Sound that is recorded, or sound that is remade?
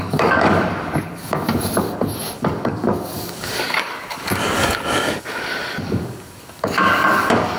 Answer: remade